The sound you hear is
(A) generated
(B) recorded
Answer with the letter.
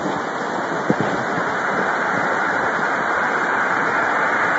A